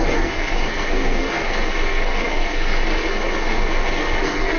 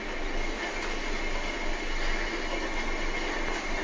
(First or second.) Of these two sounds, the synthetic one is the first